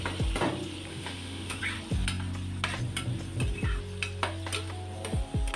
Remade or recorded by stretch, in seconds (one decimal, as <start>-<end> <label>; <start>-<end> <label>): 0.0-0.9 recorded; 0.9-1.6 remade; 1.6-5.6 recorded

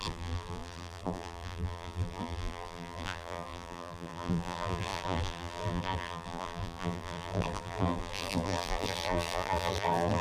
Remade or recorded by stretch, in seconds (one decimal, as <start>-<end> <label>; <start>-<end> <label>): 0.0-10.2 remade

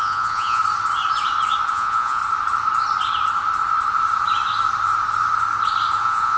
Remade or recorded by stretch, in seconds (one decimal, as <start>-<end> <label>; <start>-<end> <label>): 0.0-0.6 remade; 0.6-1.7 recorded; 1.7-2.2 remade; 2.2-6.0 recorded; 6.0-6.4 remade

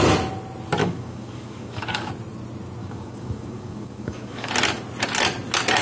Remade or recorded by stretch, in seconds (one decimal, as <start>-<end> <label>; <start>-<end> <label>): 0.0-0.8 recorded; 0.8-2.1 remade; 2.1-2.8 recorded; 2.8-4.5 remade; 4.5-5.8 recorded

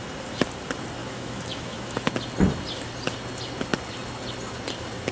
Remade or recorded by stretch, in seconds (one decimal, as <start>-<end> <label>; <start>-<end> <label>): 0.0-1.0 recorded; 1.0-2.1 remade; 2.1-5.1 recorded

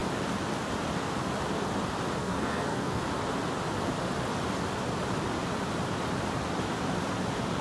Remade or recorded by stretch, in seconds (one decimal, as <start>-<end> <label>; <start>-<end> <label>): 0.0-2.2 recorded; 2.2-3.0 remade; 3.0-7.6 recorded